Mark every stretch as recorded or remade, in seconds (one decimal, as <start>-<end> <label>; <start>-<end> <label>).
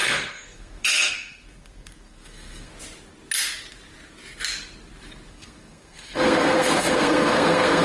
0.0-2.7 remade; 2.7-5.3 recorded; 5.3-7.8 remade